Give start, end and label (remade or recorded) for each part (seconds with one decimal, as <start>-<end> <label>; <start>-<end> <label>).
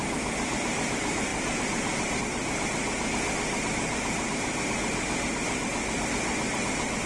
0.0-7.1 recorded